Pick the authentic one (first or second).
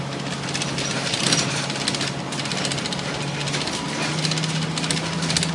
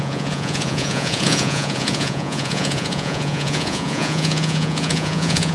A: first